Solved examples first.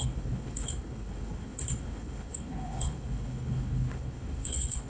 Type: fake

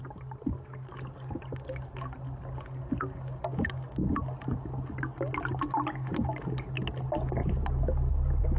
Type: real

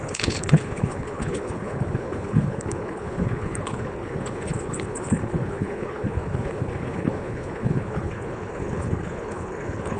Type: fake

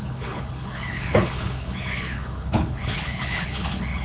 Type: fake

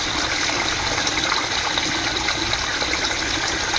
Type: real